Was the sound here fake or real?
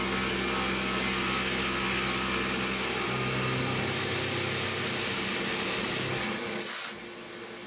real